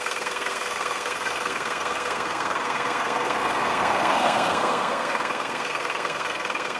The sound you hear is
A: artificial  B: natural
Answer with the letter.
A